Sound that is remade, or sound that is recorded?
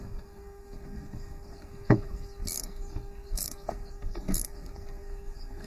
remade